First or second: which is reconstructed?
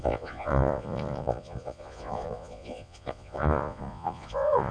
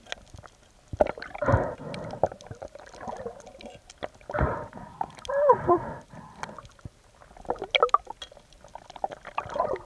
first